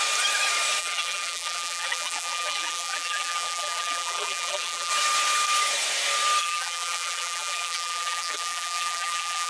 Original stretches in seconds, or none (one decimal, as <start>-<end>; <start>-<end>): 0.0-0.8; 4.9-6.4